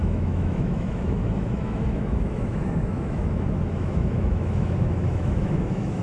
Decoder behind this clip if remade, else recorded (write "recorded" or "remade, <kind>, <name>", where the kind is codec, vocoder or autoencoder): remade, autoencoder, DAC-VAE